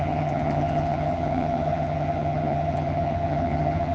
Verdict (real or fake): fake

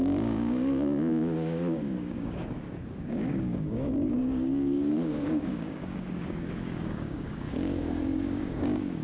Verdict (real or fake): fake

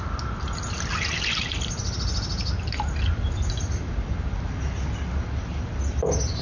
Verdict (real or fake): real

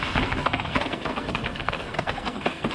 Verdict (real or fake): fake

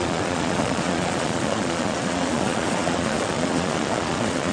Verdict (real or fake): fake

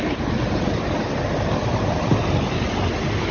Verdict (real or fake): real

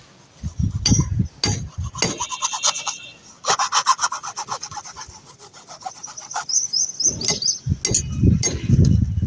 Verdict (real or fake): real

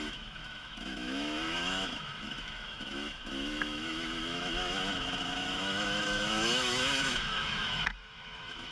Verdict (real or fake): fake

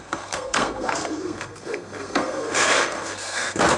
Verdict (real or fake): fake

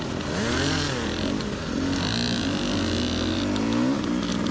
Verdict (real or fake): real